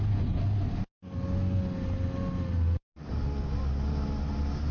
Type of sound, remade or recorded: recorded